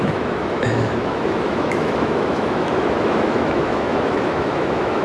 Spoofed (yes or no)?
yes